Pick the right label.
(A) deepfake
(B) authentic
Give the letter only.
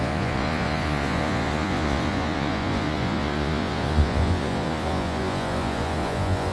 A